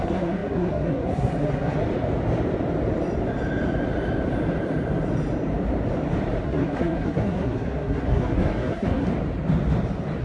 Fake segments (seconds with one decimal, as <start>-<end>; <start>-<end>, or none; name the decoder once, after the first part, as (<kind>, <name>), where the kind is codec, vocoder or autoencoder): 0.0-1.8 (codec, SNAC); 6.4-9.1

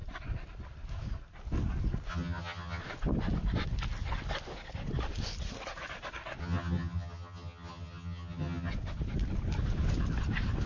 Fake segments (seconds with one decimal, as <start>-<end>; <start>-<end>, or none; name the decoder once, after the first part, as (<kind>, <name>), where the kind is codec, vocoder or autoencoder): 2.1-2.8 (vocoder, HiFi-GAN); 6.4-8.7

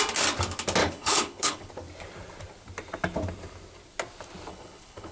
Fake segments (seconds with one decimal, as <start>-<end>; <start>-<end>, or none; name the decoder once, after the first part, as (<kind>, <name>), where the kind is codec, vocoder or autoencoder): 0.8-1.7 (codec, HILCodec); 4.5-5.1

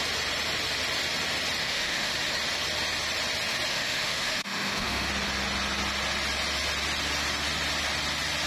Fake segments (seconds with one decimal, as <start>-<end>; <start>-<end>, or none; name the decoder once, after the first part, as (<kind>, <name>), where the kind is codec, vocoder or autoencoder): 1.6-2.1 (autoencoder, DAC-VAE); 3.7-5.1

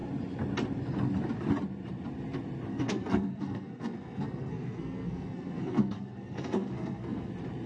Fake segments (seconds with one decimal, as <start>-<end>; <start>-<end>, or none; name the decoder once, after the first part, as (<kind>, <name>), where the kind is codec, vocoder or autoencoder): 2.7-7.3 (codec, SNAC)

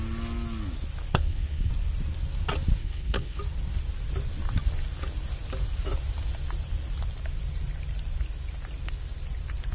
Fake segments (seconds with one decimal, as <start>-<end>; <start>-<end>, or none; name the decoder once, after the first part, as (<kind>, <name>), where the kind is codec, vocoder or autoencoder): 1.1-1.7 (codec, HILCodec); 2.8-3.4

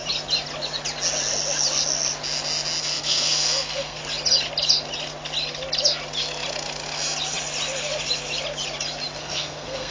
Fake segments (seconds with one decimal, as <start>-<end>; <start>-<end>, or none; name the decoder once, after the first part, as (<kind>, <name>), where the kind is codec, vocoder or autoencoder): 2.8-4.0 (codec, SNAC); 9.2-9.9